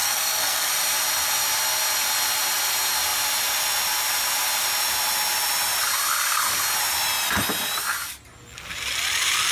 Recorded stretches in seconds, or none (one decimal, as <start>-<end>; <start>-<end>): 0.7-9.5